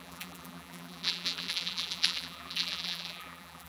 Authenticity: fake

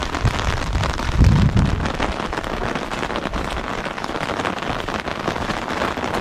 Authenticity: real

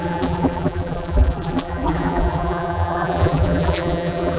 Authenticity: fake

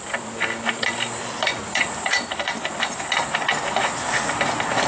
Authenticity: real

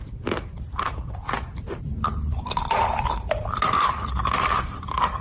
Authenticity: fake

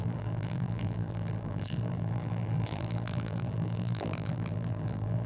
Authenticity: fake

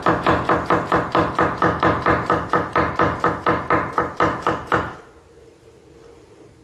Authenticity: real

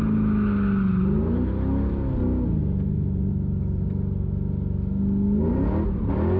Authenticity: real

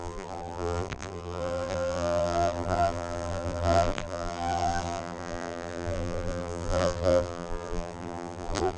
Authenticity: fake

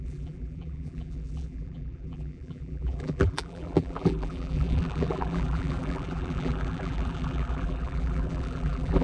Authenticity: fake